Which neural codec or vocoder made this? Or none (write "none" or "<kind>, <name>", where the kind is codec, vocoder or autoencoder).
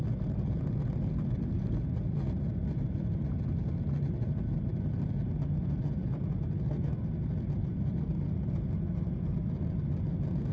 none